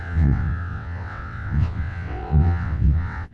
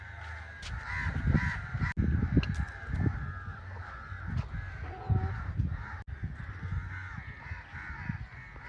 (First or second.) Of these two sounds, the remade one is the first